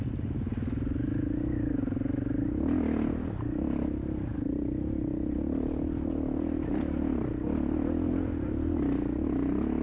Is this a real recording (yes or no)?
yes